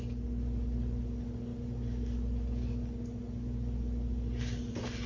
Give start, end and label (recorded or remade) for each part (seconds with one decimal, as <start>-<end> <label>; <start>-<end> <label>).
0.0-5.1 recorded